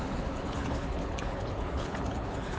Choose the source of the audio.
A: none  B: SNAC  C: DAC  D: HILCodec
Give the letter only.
D